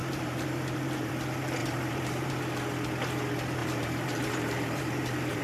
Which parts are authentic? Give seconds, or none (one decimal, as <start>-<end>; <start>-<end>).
1.1-1.6; 2.3-3.6